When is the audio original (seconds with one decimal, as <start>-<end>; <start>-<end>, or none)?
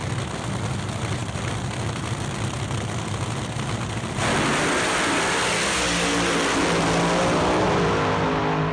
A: 0.0-8.7